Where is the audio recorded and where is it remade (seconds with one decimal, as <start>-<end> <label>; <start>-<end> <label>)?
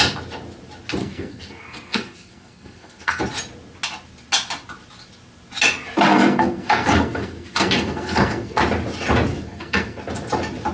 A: 0.0-1.0 recorded; 1.0-3.2 remade; 3.2-6.1 recorded; 6.1-8.6 remade; 8.6-9.3 recorded; 9.3-10.0 remade; 10.0-10.7 recorded